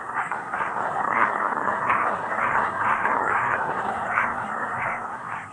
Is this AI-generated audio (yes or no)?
yes